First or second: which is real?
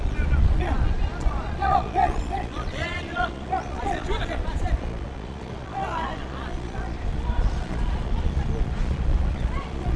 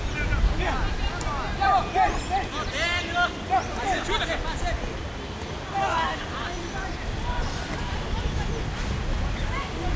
second